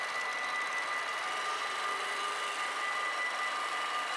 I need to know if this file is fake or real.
real